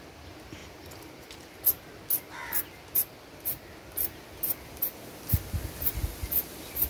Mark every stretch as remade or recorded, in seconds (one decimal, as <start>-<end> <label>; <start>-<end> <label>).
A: 0.0-6.9 recorded